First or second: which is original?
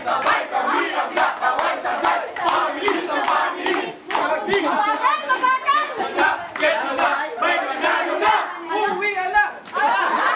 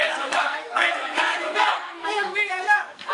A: first